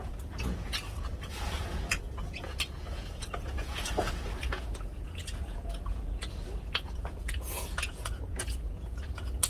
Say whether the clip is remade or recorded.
remade